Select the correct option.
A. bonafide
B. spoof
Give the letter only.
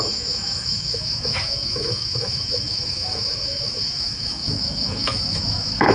B